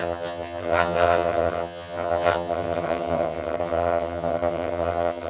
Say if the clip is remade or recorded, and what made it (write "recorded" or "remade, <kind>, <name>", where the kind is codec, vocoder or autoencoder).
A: remade, vocoder, HiFi-GAN